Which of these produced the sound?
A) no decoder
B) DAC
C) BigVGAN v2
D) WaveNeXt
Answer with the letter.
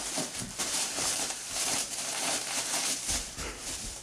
C